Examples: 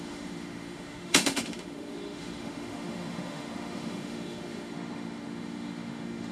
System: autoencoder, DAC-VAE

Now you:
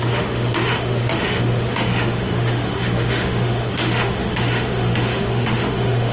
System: autoencoder, DAC-VAE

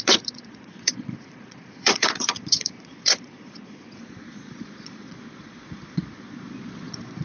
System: vocoder, Vocos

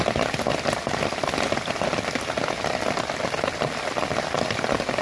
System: vocoder, BigVGAN v2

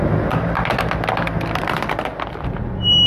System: none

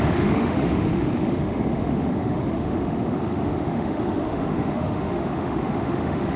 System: autoencoder, DAC-VAE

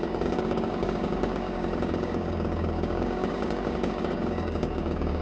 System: codec, DAC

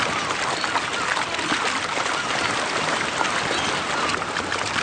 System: none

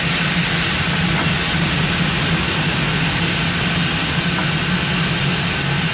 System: none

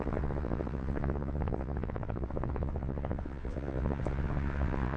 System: vocoder, WaveNeXt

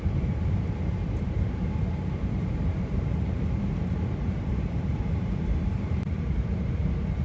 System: vocoder, BigVGAN v2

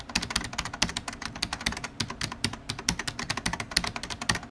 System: none